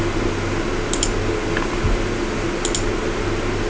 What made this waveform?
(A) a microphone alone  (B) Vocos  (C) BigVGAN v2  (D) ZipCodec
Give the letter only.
A